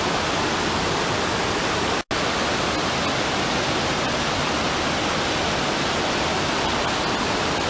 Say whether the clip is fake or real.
real